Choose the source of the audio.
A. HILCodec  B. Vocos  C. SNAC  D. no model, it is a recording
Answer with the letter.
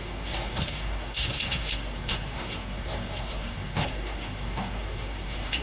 C